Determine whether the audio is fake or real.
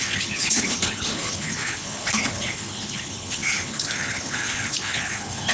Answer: fake